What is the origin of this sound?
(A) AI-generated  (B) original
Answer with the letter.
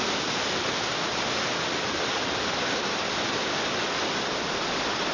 B